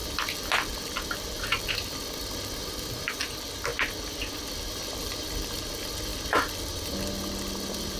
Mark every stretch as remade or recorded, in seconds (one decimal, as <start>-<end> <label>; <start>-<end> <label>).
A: 0.0-8.0 recorded